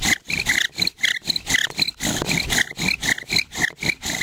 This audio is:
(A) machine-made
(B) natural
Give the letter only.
B